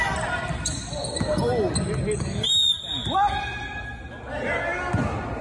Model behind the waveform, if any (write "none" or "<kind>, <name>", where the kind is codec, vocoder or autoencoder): none